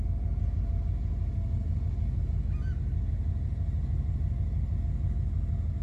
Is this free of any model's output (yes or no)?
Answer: yes